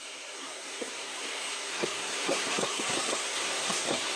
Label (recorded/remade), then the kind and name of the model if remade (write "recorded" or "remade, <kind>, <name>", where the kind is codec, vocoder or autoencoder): remade, codec, SNAC